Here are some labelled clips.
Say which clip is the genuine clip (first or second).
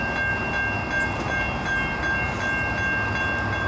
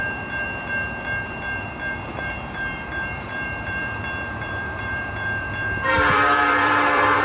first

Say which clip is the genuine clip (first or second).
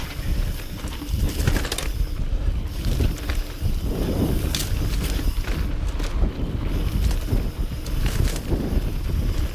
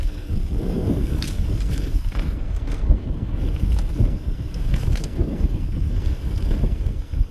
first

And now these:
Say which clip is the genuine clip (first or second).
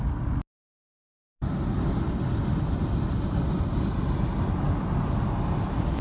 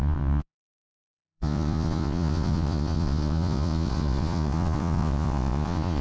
first